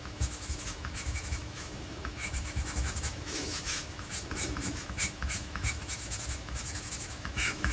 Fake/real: fake